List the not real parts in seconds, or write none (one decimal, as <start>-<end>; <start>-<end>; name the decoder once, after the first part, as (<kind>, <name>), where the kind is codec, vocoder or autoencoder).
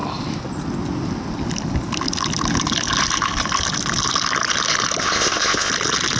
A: 5.0-5.7 (codec, ZipCodec)